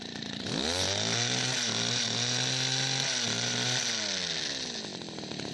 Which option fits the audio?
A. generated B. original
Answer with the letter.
B